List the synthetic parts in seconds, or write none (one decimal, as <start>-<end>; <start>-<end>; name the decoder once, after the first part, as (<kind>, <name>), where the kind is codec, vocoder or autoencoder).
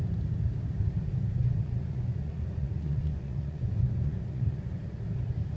1.4-4.8 (vocoder, Vocos)